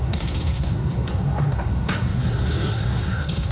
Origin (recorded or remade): remade